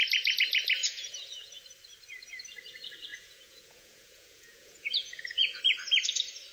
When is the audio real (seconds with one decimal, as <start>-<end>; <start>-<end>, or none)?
0.0-0.8; 1.6-3.1; 5.6-6.5